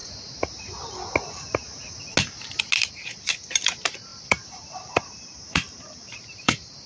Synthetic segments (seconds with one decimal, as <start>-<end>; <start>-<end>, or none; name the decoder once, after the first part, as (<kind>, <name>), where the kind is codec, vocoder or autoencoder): 2.9-6.9 (vocoder, BigVGAN v2)